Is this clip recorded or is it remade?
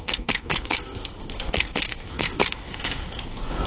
remade